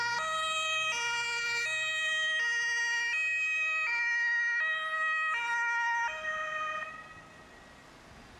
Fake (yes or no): no